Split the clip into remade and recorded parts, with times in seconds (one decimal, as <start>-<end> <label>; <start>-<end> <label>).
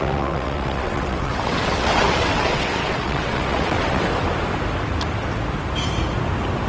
0.0-4.0 remade; 4.0-6.7 recorded